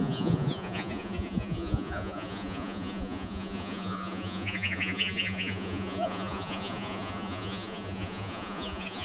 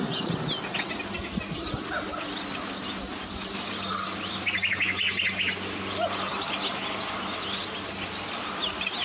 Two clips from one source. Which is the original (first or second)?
second